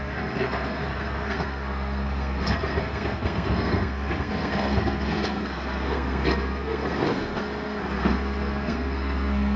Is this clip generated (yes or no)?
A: yes